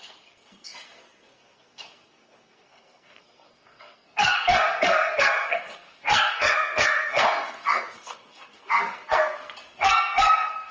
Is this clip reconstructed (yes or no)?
yes